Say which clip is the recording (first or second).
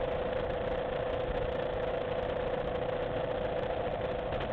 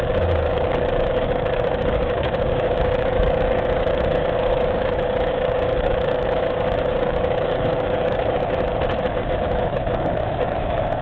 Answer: first